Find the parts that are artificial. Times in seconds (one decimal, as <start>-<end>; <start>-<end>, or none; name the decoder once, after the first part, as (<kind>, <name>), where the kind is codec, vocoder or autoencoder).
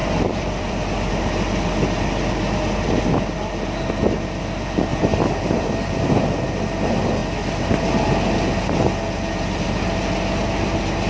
0.0-1.1 (vocoder, BigVGAN v2); 4.9-6.3